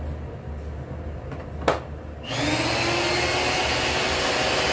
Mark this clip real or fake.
real